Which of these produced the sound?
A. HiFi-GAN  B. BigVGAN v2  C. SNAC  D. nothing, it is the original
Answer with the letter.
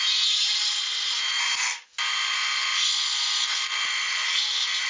D